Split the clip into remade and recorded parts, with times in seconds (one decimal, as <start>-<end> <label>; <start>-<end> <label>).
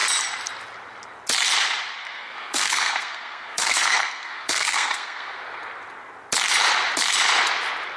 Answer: 0.0-2.0 recorded; 2.0-5.4 remade; 5.4-8.0 recorded